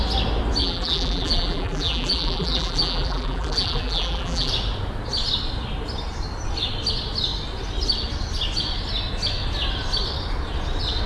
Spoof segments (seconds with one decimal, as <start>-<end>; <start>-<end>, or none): 0.6-4.5